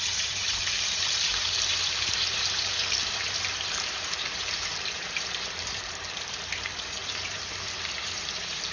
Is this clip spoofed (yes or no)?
yes